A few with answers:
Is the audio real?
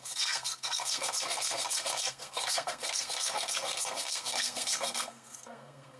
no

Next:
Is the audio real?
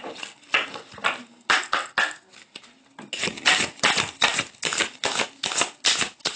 yes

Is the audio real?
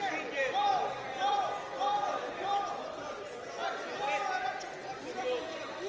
yes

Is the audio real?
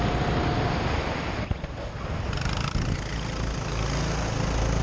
yes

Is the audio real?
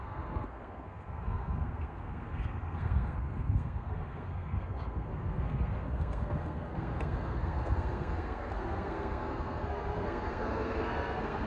no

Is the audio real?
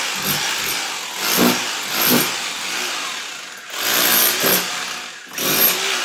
yes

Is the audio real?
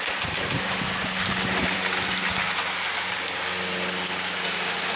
yes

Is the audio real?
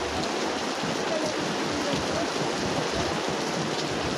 yes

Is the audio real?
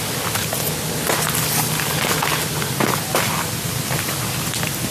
yes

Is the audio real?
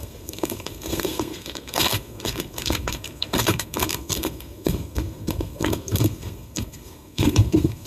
no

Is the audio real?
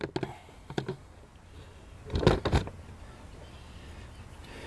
yes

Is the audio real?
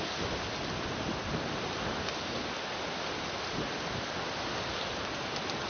yes